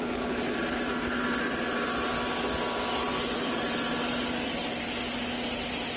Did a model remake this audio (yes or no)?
no